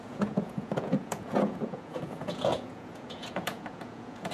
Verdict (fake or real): fake